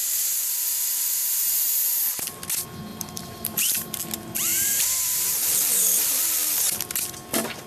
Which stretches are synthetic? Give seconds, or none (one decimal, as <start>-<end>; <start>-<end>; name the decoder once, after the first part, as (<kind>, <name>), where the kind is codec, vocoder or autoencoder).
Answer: 0.0-1.2 (vocoder, BigVGAN v2); 2.9-4.0; 4.5-6.2